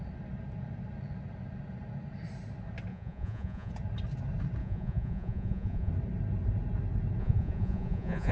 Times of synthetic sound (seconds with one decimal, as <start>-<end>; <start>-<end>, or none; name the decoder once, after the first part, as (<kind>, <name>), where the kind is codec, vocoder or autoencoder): 2.9-3.7 (vocoder, Vocos); 4.6-5.9; 7.2-8.3